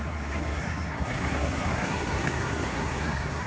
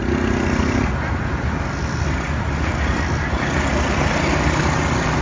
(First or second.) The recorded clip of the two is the second